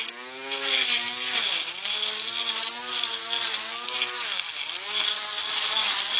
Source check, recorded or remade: recorded